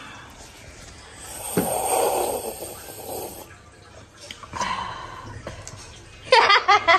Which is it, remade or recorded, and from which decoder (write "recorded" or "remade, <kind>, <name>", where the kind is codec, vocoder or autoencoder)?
recorded